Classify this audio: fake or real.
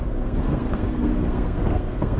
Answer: fake